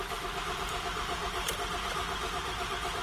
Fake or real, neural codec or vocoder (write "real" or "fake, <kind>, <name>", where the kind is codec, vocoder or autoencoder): fake, vocoder, BigVGAN v2